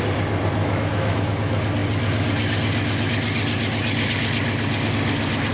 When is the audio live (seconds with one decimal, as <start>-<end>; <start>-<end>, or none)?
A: 0.0-0.6; 1.3-5.5